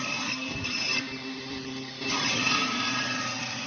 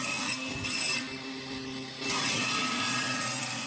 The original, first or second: second